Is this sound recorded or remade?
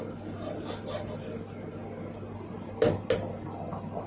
recorded